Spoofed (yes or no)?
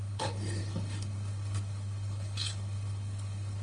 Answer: yes